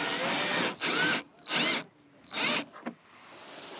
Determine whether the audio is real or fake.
real